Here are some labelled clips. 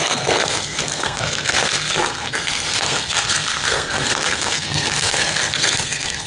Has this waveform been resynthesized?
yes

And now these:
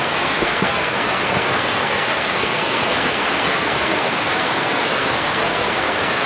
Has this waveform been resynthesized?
yes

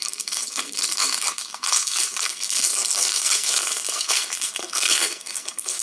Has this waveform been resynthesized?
yes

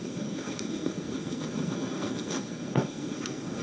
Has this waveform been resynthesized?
yes